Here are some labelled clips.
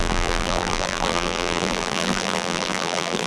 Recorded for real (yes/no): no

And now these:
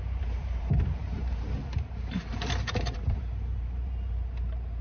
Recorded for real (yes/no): no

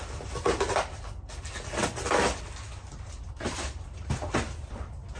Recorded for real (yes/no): yes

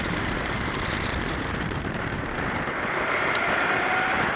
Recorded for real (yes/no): no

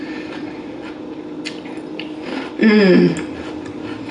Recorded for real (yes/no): yes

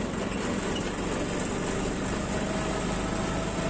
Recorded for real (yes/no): yes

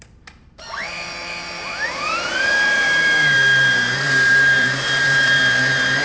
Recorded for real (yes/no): no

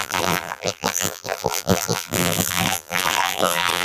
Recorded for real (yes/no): no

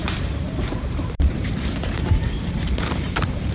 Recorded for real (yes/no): no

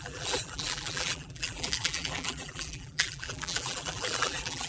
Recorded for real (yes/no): no